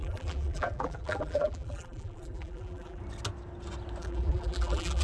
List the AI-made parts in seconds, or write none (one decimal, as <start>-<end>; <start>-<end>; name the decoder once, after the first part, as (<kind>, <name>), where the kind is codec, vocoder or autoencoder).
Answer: 0.0-3.0 (vocoder, BigVGAN v2); 4.0-5.0